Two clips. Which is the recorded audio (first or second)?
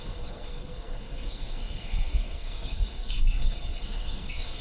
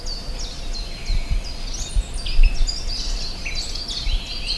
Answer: second